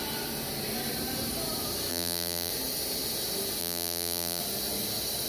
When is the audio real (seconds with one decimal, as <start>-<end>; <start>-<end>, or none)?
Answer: 0.0-1.9; 2.5-3.6; 4.4-5.3